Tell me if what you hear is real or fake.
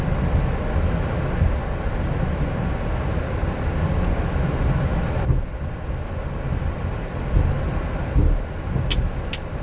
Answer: real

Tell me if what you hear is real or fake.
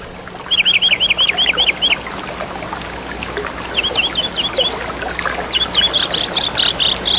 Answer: real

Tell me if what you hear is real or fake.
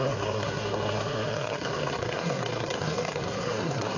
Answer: fake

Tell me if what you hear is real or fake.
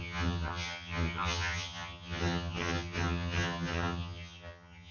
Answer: fake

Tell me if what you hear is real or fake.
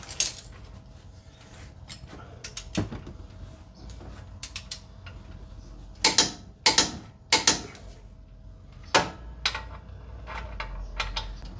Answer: real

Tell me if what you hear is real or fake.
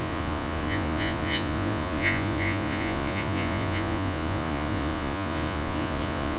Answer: fake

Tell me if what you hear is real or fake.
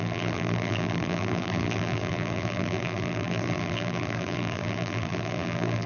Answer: fake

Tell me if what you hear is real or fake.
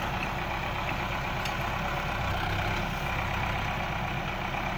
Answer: real